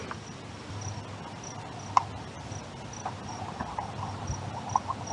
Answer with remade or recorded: recorded